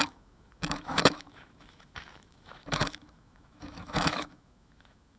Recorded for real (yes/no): no